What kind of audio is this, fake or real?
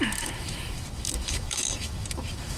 fake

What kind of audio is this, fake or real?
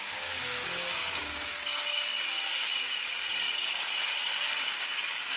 fake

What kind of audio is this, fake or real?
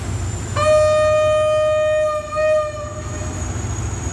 real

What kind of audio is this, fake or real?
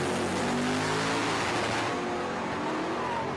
real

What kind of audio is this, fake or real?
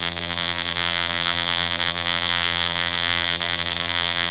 fake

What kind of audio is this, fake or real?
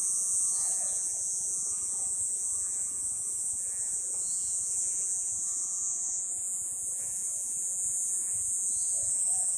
fake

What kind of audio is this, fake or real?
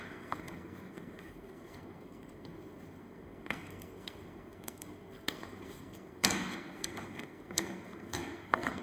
fake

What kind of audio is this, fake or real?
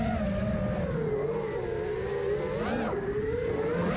real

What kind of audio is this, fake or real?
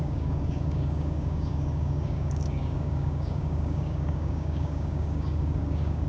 fake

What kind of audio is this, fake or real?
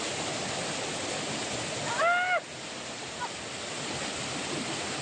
real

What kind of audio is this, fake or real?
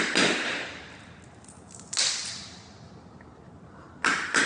real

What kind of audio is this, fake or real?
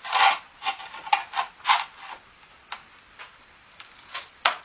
real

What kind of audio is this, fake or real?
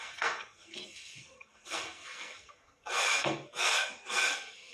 fake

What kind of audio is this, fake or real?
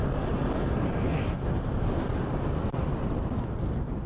real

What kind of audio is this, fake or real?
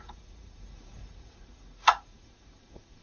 fake